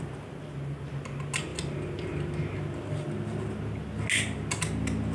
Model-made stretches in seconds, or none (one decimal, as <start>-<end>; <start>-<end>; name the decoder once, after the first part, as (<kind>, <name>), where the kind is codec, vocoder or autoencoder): none